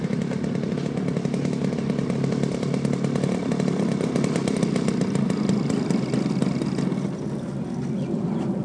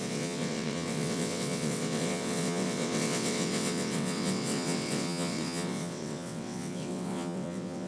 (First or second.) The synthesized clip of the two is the second